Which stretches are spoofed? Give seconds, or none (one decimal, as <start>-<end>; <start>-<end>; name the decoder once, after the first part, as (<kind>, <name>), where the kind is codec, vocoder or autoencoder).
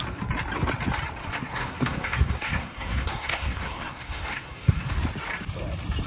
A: 1.2-4.9 (codec, SNAC)